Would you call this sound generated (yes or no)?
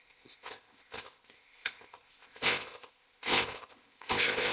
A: yes